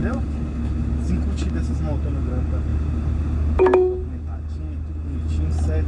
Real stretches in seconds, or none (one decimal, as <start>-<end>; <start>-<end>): 0.0-5.9